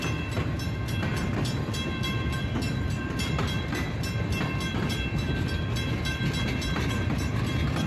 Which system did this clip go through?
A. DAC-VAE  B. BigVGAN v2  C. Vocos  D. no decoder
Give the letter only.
B